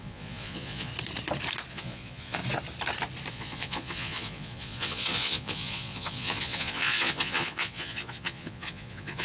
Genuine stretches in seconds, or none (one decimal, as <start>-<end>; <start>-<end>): 0.9-1.7; 2.4-3.3